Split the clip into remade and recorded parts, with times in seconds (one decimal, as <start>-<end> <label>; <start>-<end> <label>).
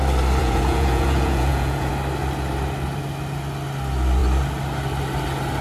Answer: 0.0-0.4 recorded; 0.4-1.9 remade; 1.9-5.6 recorded